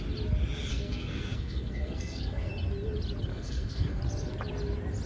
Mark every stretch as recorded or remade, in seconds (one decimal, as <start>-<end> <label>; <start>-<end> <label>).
0.0-0.7 recorded; 0.7-2.5 remade; 2.5-3.3 recorded; 3.3-4.0 remade; 4.0-5.1 recorded